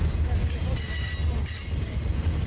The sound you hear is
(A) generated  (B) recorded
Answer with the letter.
B